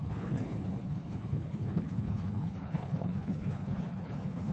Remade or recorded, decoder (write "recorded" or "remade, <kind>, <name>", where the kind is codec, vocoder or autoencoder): remade, codec, HILCodec